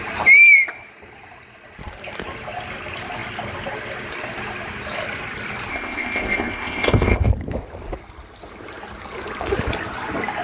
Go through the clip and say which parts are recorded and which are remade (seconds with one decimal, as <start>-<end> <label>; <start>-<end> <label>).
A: 0.0-5.7 recorded; 5.7-7.3 remade; 7.3-10.4 recorded